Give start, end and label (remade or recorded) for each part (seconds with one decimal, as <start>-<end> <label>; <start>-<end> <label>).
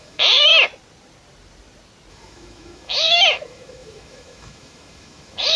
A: 0.0-0.5 remade; 0.5-2.1 recorded; 2.1-5.6 remade